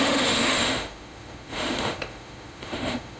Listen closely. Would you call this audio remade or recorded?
remade